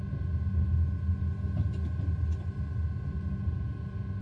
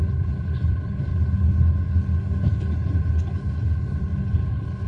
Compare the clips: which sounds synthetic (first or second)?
second